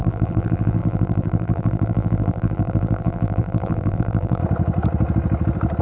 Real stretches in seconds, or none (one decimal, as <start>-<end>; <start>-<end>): 4.4-5.8